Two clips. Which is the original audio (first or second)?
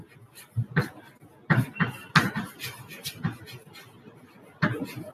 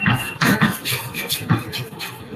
first